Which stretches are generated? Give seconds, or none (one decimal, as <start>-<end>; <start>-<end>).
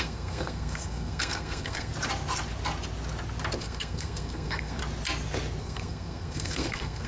0.0-1.9; 3.6-4.8; 5.6-7.1